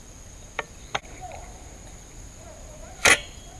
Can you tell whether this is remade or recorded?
remade